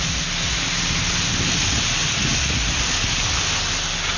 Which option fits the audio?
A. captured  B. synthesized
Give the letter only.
A